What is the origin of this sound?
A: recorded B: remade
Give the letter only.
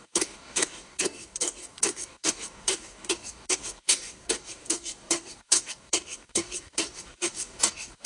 B